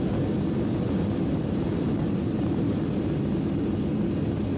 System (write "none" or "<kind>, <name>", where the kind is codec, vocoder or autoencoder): none